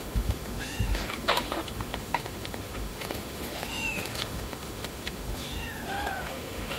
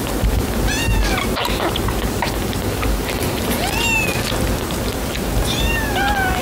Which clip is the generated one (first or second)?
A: first